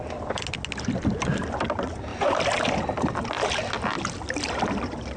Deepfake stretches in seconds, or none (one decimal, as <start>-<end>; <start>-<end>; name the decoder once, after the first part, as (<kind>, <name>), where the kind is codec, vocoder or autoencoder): none